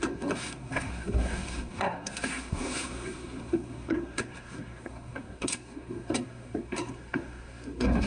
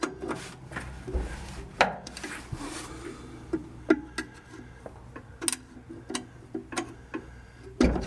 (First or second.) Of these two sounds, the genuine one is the second